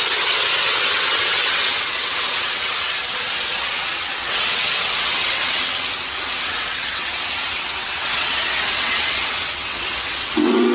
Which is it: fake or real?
fake